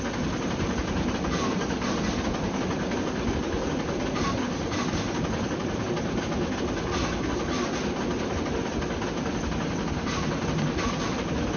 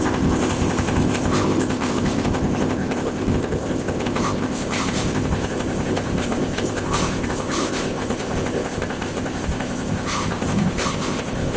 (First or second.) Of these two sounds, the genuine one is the first